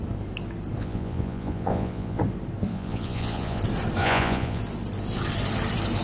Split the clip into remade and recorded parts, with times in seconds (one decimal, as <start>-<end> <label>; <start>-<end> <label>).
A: 0.0-0.8 recorded; 0.8-2.2 remade; 2.2-2.7 recorded; 2.7-3.6 remade; 3.6-4.0 recorded; 4.0-4.6 remade; 4.6-6.0 recorded